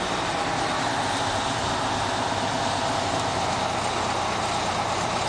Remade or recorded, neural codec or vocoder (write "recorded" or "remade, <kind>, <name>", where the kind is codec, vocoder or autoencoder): recorded